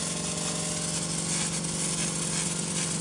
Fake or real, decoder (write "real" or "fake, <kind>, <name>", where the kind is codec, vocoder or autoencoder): real